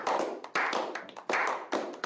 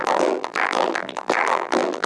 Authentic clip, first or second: first